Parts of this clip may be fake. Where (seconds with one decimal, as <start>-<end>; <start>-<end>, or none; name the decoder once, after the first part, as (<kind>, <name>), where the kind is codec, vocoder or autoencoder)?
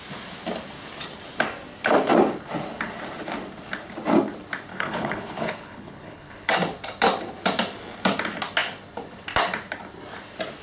4.7-6.5 (codec, HILCodec)